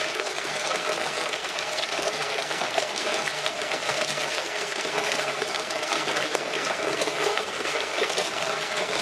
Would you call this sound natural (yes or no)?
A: no